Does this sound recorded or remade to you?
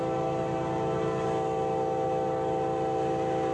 recorded